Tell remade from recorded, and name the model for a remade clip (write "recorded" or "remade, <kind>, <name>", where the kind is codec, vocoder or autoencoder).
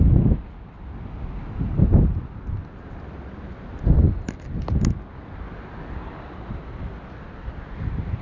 recorded